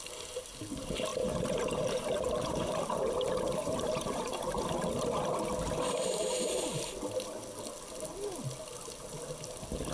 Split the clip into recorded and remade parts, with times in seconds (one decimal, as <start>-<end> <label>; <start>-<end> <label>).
0.0-1.1 recorded; 1.1-4.6 remade; 4.6-9.9 recorded